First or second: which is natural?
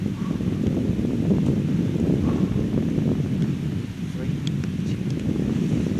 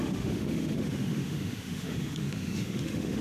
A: first